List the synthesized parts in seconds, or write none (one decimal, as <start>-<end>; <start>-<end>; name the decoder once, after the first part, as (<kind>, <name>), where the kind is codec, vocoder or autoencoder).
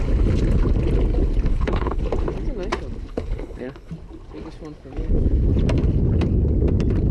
1.5-2.0 (codec, HILCodec); 3.1-3.9